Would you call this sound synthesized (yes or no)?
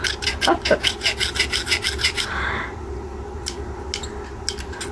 no